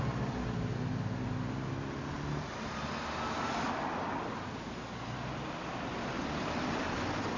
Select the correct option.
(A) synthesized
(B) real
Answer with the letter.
B